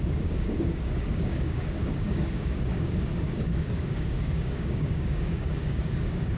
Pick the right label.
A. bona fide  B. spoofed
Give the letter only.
B